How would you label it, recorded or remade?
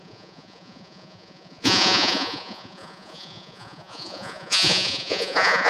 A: remade